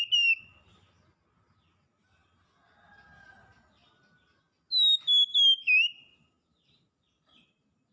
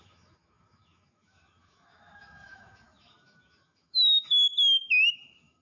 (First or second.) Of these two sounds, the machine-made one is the second